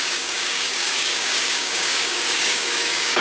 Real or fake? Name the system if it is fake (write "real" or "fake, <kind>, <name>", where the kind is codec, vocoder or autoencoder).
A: fake, codec, DAC